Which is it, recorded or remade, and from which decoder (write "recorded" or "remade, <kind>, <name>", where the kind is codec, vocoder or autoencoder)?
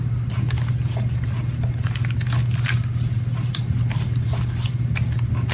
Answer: recorded